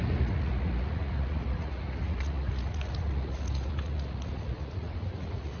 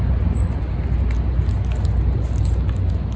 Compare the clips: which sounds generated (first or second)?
first